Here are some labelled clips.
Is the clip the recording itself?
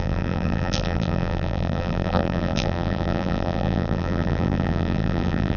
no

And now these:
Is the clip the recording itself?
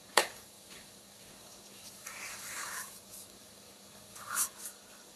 no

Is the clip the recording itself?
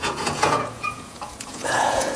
no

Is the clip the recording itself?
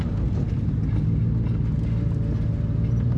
yes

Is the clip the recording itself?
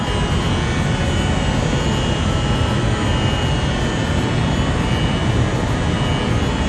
yes